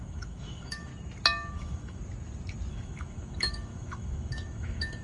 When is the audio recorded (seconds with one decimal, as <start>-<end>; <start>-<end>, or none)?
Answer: 0.9-1.5; 2.0-2.7